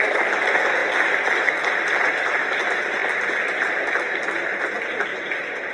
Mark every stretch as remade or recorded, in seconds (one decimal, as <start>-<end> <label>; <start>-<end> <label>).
0.0-5.1 recorded; 5.1-5.7 remade